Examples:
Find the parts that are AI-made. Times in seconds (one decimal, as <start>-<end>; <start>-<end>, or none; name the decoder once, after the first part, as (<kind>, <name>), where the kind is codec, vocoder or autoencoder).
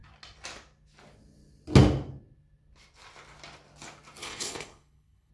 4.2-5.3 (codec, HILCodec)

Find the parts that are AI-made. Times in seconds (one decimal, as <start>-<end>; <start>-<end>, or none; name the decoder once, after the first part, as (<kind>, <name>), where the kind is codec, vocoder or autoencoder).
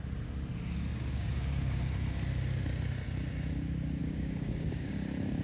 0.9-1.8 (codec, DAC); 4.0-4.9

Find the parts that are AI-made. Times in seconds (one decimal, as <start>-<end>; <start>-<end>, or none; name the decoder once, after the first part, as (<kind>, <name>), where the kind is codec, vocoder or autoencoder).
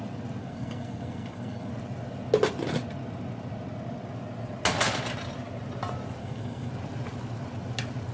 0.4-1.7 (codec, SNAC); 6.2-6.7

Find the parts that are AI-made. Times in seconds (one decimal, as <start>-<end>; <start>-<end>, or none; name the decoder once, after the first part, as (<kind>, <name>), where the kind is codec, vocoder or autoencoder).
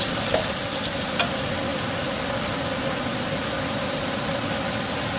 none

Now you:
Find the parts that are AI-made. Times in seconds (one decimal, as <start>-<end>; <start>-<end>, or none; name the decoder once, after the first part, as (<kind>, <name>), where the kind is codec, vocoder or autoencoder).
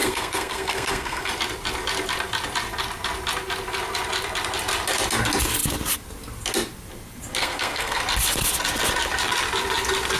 0.0-1.3 (codec, SNAC); 7.4-8.0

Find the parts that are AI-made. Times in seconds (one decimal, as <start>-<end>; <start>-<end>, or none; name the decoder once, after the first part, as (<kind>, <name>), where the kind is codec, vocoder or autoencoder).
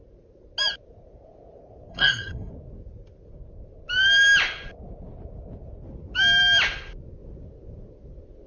1.9-2.5 (codec, SNAC)